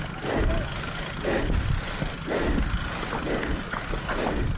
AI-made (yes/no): no